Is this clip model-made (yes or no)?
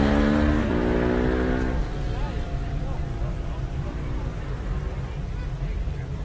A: no